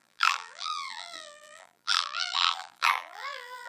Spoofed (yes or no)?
yes